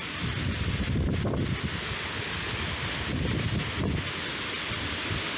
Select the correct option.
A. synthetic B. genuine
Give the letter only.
B